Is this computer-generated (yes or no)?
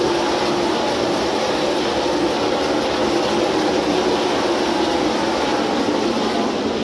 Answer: no